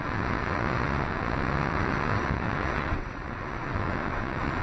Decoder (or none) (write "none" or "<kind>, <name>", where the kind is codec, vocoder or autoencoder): vocoder, WaveNeXt